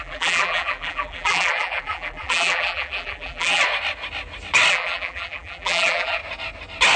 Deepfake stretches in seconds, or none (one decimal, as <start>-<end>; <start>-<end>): 0.0-3.6; 4.7-6.2